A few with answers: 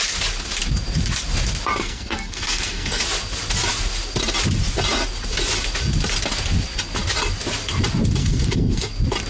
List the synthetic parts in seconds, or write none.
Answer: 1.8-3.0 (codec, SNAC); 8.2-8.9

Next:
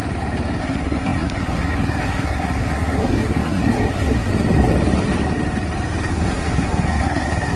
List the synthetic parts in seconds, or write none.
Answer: 0.6-4.3 (codec, SNAC); 6.1-7.6

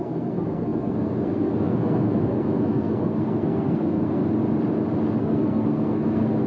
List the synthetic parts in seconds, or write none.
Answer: 0.0-4.2 (codec, SNAC); 5.2-6.5

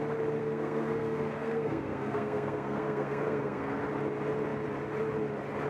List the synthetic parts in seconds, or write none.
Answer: 0.4-3.8 (codec, SNAC)